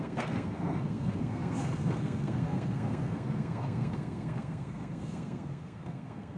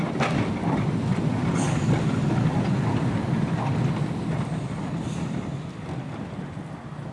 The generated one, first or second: first